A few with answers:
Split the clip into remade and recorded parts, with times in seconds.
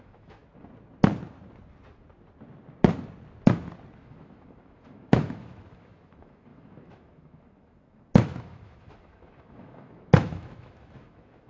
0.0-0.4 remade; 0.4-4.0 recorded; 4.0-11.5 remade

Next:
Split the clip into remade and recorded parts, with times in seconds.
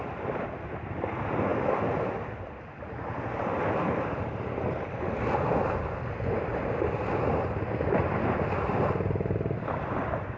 0.0-10.4 recorded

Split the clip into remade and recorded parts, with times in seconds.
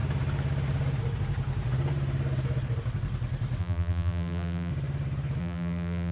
0.0-3.6 recorded; 3.6-4.7 remade; 4.7-5.4 recorded; 5.4-6.1 remade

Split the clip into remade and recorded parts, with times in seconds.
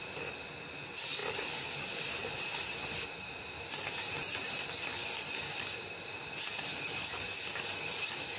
0.0-8.4 recorded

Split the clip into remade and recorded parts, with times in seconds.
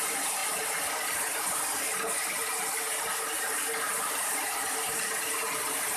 0.0-6.0 remade